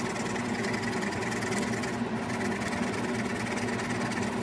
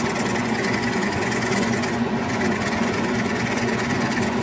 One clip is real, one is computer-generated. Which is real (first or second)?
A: first